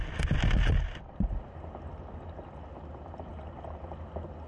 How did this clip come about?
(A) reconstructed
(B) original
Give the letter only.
B